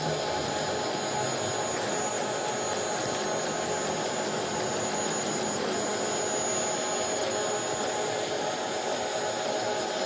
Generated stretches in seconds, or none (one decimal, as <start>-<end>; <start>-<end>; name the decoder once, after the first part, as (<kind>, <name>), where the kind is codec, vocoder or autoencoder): none